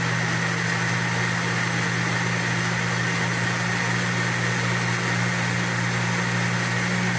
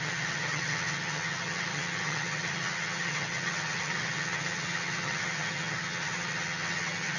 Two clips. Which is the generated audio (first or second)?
second